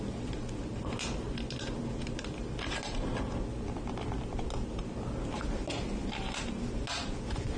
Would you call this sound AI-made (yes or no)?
no